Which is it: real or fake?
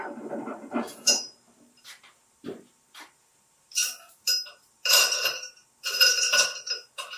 fake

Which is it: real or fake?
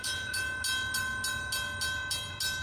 real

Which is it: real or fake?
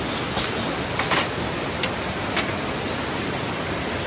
real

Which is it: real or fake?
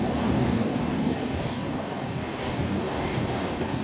fake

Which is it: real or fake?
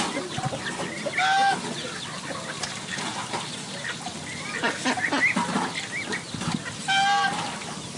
real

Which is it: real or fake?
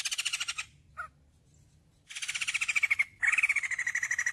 real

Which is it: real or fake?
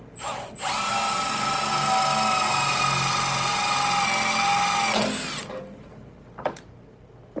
real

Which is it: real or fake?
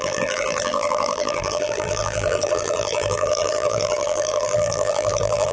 fake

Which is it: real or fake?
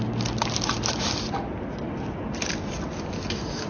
real